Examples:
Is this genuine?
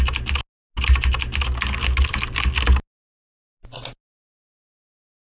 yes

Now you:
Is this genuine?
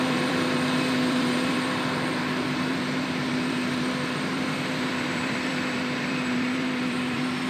no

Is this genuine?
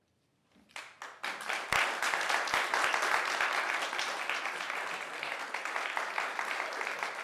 yes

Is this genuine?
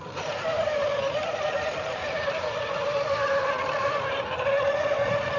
no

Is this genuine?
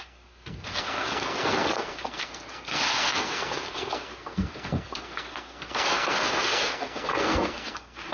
no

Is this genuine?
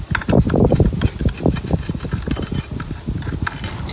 yes